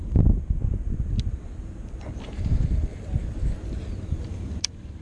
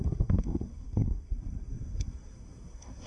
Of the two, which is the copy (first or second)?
second